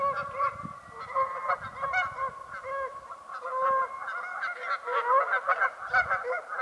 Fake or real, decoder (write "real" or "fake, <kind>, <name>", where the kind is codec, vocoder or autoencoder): real